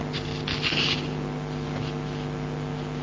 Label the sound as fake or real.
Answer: real